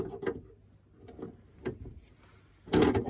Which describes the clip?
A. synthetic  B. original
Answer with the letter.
B